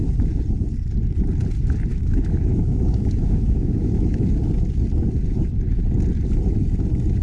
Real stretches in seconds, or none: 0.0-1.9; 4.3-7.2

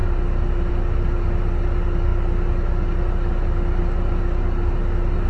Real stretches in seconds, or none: 0.7-5.3